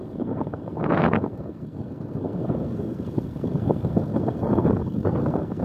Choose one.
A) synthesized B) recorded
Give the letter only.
A